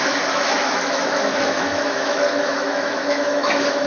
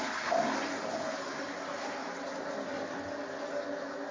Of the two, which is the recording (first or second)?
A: second